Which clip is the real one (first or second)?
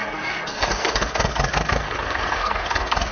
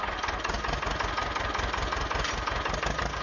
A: second